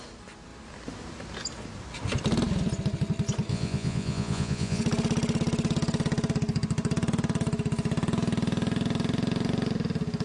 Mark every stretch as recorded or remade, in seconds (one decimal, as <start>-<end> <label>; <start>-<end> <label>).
0.0-3.5 recorded; 3.5-4.8 remade; 4.8-10.2 recorded